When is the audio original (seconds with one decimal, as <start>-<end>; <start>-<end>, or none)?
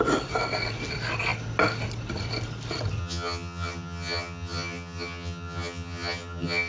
0.0-3.0